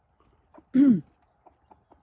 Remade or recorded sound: recorded